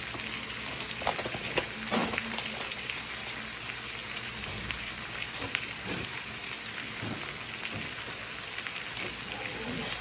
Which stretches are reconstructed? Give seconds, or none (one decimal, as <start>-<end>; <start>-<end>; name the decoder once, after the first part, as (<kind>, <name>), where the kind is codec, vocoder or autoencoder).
2.0-3.1 (vocoder, BigVGAN v2); 4.0-6.4